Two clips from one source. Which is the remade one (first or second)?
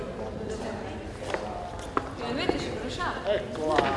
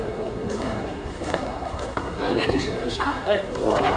second